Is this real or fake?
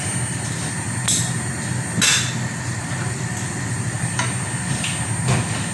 real